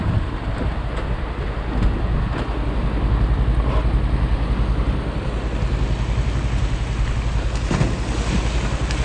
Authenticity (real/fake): real